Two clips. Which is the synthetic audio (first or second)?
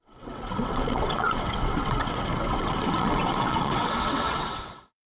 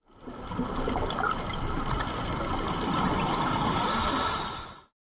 first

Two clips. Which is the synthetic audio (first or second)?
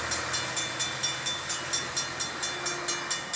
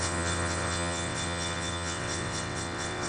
second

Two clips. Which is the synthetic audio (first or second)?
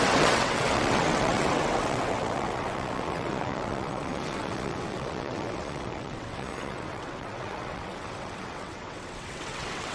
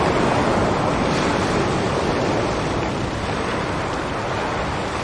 first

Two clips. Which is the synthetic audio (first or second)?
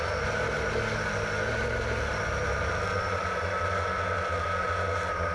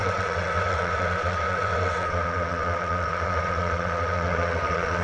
second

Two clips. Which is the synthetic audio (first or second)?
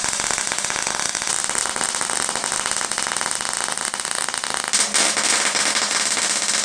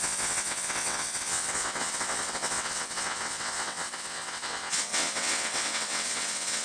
second